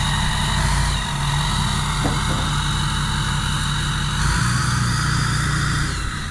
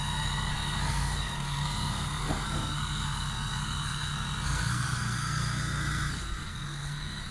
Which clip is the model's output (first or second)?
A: second